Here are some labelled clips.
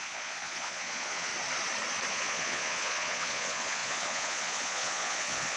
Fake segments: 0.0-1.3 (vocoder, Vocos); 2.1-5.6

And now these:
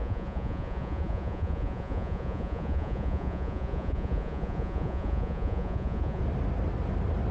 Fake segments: 0.0-6.2 (vocoder, Vocos)

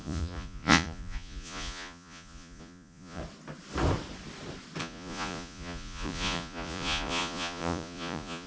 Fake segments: 0.0-3.2 (vocoder, Vocos); 4.8-8.5

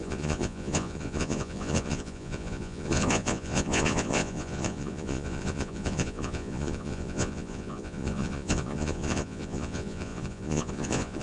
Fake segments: 0.0-11.2 (vocoder, Vocos)

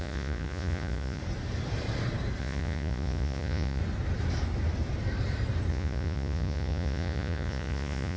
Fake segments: 0.0-1.2 (vocoder, Vocos); 2.4-3.8; 5.7-8.2

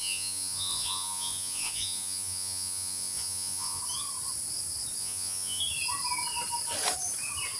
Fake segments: 0.0-3.8 (vocoder, Vocos); 5.0-5.6

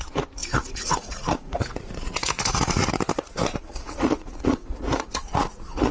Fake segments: 0.0-5.9 (vocoder, Vocos)